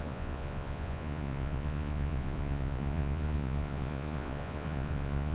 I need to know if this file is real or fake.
fake